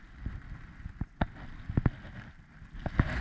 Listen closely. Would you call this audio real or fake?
real